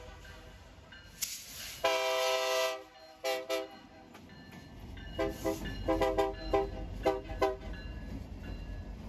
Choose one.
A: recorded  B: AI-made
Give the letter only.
A